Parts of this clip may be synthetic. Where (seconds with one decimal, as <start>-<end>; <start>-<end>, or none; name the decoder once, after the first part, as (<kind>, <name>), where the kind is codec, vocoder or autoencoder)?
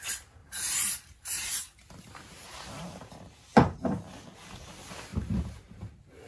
0.4-4.2 (vocoder, BigVGAN v2); 5.1-6.3